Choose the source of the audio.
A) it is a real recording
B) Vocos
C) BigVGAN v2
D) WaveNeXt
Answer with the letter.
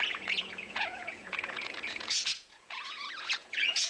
B